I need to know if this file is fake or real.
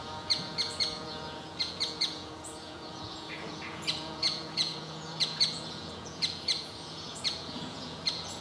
fake